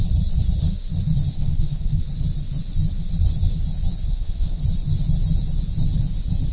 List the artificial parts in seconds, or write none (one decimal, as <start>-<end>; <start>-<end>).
1.3-2.0; 4.1-4.6